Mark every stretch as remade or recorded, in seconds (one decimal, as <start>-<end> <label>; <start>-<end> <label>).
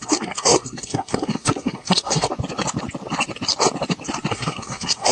0.0-2.3 remade; 2.3-4.3 recorded; 4.3-5.1 remade